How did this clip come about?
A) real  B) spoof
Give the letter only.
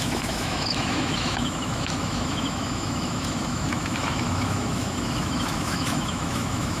B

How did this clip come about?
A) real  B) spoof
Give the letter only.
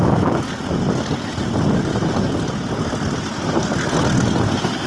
A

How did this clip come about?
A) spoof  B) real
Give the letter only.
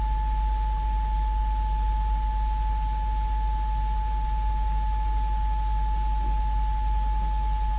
B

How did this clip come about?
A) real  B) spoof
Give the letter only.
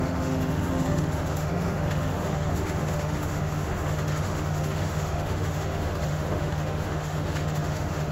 B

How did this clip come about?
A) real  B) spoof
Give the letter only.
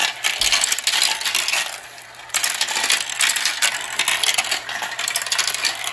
A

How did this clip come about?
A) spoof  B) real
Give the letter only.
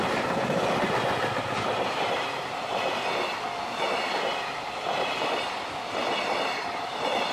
B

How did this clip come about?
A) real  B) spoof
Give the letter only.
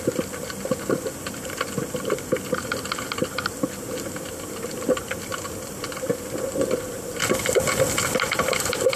A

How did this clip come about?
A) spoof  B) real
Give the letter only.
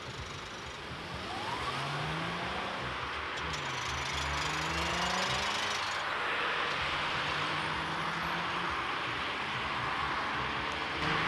B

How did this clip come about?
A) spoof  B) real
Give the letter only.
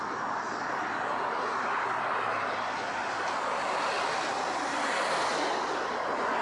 B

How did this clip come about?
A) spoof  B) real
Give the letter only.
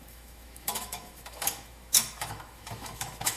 A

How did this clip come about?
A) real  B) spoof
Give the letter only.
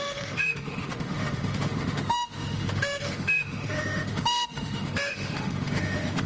B